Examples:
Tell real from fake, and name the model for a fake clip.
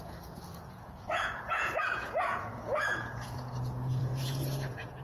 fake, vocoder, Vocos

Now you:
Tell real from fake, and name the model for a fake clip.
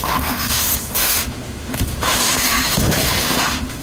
fake, autoencoder, DAC-VAE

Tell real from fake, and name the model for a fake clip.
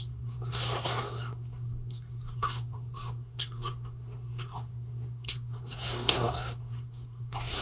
fake, codec, SNAC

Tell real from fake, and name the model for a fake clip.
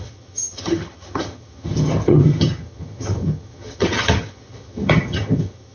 fake, vocoder, HiFi-GAN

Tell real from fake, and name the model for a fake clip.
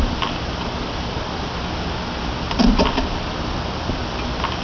real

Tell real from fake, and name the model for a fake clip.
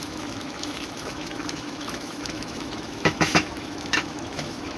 fake, autoencoder, DAC-VAE